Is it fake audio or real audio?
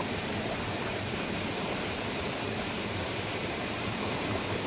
fake